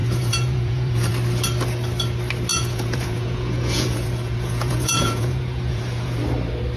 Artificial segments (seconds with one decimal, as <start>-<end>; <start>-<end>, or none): 0.0-1.1; 2.5-6.2